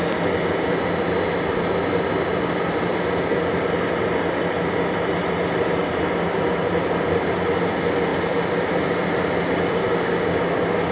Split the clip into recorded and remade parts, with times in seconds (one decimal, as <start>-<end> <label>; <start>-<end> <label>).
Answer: 0.0-10.9 recorded

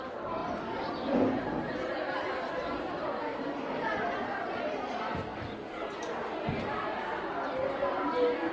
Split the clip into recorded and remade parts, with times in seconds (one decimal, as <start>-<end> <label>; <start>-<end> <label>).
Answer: 0.0-8.5 remade

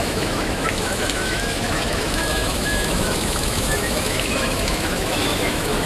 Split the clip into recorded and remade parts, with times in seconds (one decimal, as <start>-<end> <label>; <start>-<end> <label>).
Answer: 0.0-5.9 remade

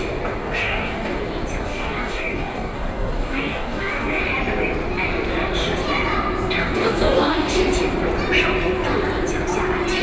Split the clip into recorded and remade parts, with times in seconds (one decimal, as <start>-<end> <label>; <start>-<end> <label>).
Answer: 0.0-0.4 recorded; 0.4-1.2 remade; 1.2-1.6 recorded; 1.6-4.2 remade; 4.2-6.6 recorded; 6.6-7.6 remade; 7.6-10.0 recorded

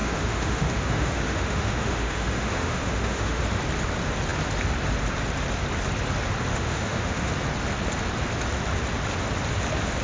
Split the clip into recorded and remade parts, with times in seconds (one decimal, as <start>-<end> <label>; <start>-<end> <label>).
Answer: 0.0-3.4 remade; 3.4-6.5 recorded; 6.5-7.3 remade; 7.3-10.0 recorded